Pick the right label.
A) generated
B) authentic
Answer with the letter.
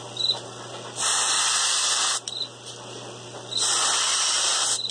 A